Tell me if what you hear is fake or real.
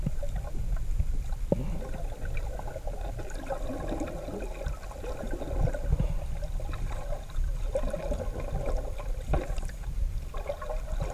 real